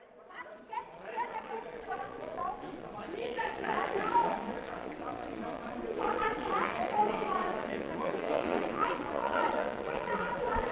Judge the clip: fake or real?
fake